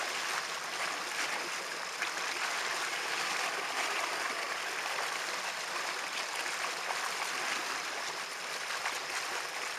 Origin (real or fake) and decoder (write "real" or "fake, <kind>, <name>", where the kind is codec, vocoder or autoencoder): real